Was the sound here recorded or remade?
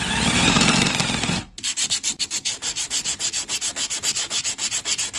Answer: recorded